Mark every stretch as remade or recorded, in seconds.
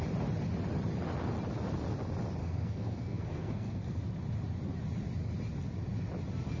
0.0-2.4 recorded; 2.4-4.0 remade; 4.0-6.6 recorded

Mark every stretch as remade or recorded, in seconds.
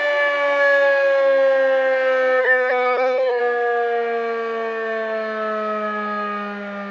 0.0-2.4 recorded; 2.4-3.4 remade; 3.4-6.9 recorded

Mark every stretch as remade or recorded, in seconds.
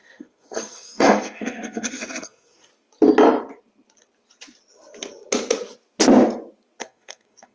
0.0-2.7 remade; 2.7-6.8 recorded; 6.8-7.5 remade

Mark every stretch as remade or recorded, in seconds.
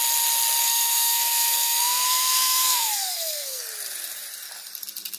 0.0-0.6 recorded; 0.6-3.6 remade; 3.6-5.2 recorded